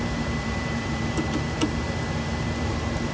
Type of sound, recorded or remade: remade